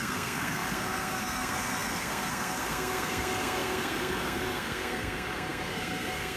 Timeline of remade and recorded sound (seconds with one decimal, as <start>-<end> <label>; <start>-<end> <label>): 0.0-6.4 remade